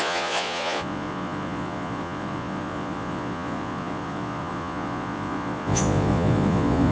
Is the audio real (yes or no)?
no